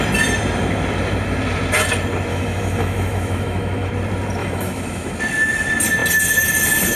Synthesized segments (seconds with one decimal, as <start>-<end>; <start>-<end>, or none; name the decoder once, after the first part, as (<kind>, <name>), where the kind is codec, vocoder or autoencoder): 2.3-3.9 (autoencoder, DAC-VAE); 4.4-5.2